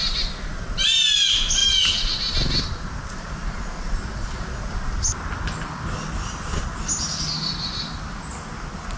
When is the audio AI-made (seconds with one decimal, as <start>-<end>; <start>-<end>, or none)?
none